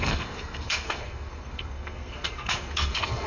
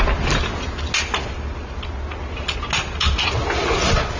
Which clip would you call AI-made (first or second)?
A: first